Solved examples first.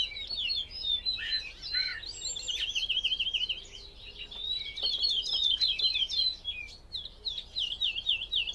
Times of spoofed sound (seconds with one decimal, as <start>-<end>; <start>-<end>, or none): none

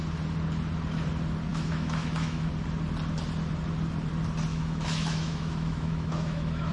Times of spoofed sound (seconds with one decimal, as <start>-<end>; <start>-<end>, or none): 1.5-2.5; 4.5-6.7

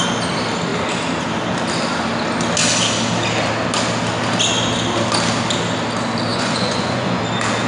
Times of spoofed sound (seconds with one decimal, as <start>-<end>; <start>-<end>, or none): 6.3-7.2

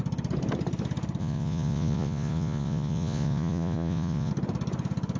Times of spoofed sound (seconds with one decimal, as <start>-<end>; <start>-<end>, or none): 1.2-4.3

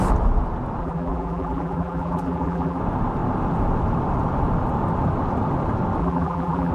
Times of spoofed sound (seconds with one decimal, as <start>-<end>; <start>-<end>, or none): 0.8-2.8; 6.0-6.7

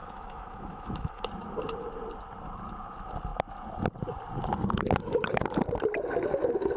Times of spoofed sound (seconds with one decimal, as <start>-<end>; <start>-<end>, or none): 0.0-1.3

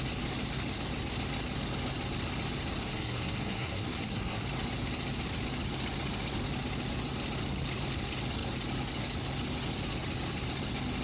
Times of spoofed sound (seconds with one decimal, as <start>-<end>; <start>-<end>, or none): 2.8-4.4

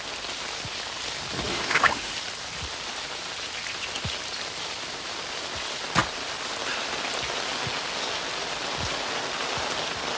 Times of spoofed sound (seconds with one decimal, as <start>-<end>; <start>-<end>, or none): 1.5-2.1